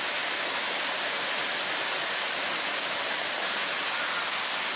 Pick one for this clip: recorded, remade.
recorded